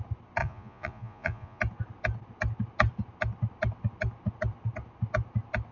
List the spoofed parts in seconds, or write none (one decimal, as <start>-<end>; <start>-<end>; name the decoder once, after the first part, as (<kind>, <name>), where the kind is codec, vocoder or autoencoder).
0.4-1.6 (vocoder, Vocos)